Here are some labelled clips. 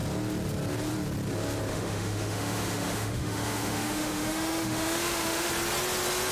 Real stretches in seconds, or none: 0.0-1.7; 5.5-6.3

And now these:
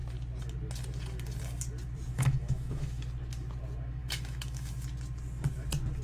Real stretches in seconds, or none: 0.0-2.1; 3.0-4.0; 4.7-6.0

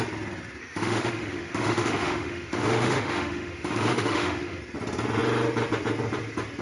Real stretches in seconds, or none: 0.0-0.6; 4.6-6.6

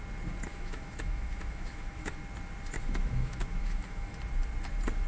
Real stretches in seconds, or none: 0.0-0.5; 2.1-2.8; 4.2-5.1

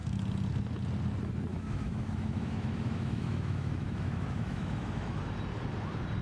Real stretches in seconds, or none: 0.0-1.5; 5.2-6.2

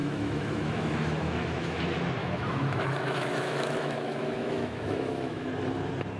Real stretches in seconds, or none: 1.8-2.2; 5.5-6.2

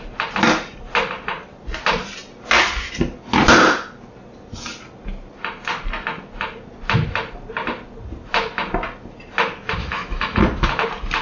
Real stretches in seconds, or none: 0.0-9.8; 10.4-11.2